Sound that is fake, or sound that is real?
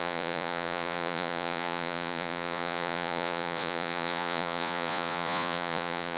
fake